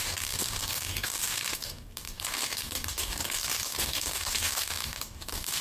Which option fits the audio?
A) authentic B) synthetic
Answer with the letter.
B